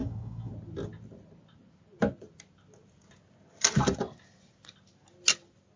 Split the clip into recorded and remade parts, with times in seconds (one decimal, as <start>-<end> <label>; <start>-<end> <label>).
0.0-0.5 remade; 0.5-5.8 recorded